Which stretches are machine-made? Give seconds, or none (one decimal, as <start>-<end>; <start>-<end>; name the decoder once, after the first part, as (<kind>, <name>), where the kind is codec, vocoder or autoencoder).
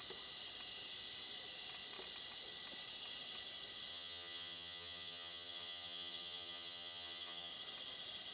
3.9-7.5 (vocoder, HiFi-GAN)